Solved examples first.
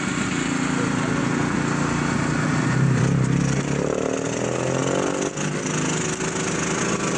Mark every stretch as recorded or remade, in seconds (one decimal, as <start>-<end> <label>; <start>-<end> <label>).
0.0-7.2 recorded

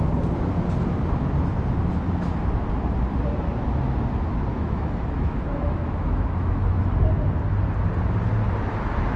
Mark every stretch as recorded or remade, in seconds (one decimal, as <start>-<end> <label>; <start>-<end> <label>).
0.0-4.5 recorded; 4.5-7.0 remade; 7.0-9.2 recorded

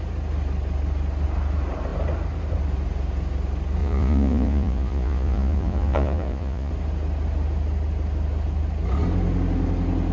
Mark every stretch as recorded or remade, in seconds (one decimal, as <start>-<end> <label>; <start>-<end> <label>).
0.0-3.8 recorded; 3.8-6.7 remade; 6.7-10.1 recorded